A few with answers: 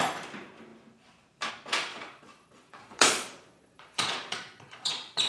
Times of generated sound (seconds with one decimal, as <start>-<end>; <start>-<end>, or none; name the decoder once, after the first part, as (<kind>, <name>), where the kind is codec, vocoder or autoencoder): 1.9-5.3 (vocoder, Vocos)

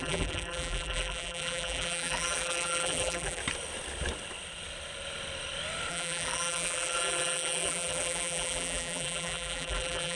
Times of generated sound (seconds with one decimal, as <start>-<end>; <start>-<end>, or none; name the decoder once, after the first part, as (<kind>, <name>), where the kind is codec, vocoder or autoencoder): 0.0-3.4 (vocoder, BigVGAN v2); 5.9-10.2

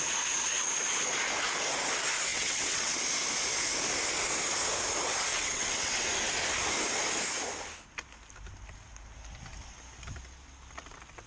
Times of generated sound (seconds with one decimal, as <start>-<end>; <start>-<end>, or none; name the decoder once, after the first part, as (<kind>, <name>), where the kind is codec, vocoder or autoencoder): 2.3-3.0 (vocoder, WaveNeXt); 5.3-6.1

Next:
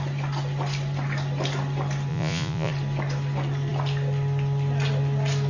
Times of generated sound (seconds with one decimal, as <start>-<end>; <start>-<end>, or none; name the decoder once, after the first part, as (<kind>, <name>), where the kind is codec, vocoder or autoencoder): 2.1-2.7 (vocoder, Vocos)